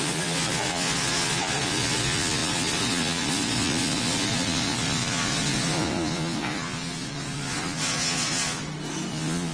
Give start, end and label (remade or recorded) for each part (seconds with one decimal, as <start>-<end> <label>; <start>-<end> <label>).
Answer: 0.0-8.6 remade; 8.6-9.1 recorded; 9.1-9.5 remade